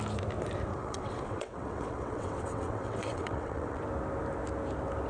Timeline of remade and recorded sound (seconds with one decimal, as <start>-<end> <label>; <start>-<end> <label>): 0.0-0.7 recorded; 0.7-3.8 remade; 3.8-5.1 recorded